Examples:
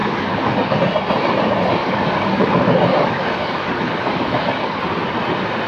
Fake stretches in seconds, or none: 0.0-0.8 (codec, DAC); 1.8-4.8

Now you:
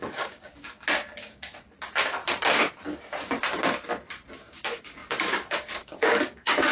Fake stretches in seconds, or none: 0.0-0.5 (codec, DAC); 4.5-6.7

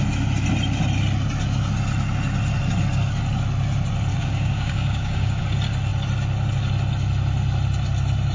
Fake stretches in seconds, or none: 4.1-5.4 (codec, DAC)

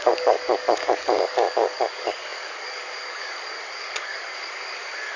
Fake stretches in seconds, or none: 0.0-5.2 (codec, DAC)

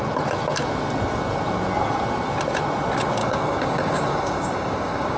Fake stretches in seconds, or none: 3.2-5.2 (codec, DAC)

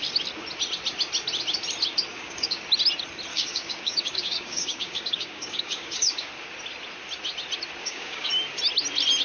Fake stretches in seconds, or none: 2.1-2.6 (codec, DAC); 3.3-6.3; 7.8-8.3

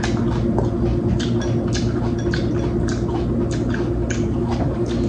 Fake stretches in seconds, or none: 4.4-5.1 (codec, DAC)